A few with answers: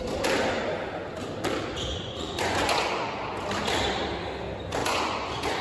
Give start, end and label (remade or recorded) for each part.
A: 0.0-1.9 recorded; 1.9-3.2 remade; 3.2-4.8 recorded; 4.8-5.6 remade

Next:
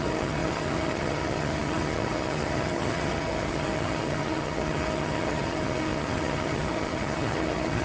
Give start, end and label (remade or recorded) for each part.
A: 0.0-7.8 remade

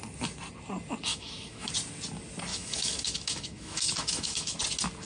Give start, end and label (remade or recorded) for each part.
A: 0.0-1.1 recorded; 1.1-1.7 remade; 1.7-2.5 recorded; 2.5-4.6 remade; 4.6-5.0 recorded

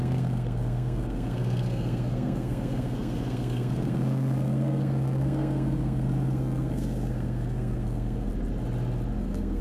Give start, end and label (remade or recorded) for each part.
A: 0.0-8.3 remade; 8.3-9.2 recorded; 9.2-9.6 remade

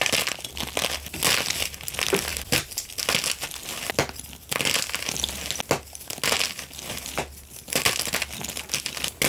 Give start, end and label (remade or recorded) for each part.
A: 0.0-2.3 recorded; 2.3-2.9 remade; 2.9-9.3 recorded

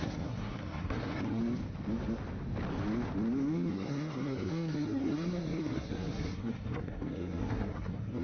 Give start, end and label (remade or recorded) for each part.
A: 0.0-1.4 remade; 1.4-3.7 recorded; 3.7-8.2 remade